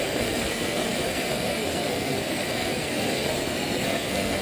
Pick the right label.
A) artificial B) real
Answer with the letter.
A